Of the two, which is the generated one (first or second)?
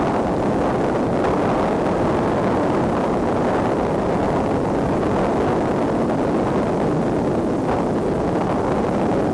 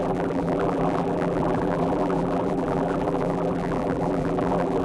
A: second